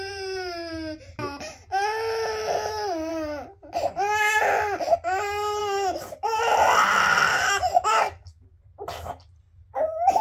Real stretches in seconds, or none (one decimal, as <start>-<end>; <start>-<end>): 0.0-5.6; 6.4-7.3; 8.6-10.2